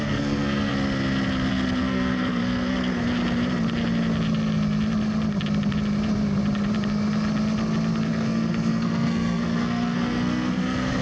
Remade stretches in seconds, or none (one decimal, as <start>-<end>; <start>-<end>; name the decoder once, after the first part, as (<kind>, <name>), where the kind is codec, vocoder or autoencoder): 0.0-0.7 (codec, SNAC); 1.5-3.0; 8.1-11.0